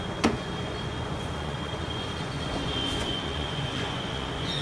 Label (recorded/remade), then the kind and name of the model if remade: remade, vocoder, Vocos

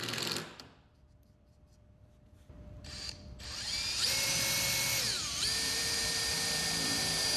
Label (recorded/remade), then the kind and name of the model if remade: remade, vocoder, BigVGAN v2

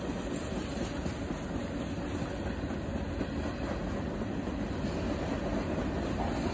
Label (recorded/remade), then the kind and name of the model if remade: recorded